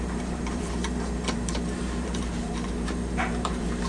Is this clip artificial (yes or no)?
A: yes